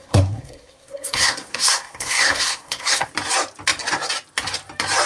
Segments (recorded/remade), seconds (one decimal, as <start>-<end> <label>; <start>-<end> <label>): 0.0-3.1 remade; 3.1-5.1 recorded